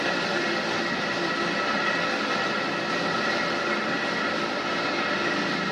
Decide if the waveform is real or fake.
fake